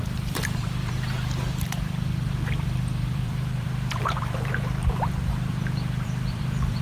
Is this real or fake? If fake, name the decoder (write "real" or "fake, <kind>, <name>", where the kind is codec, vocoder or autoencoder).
fake, vocoder, BigVGAN v2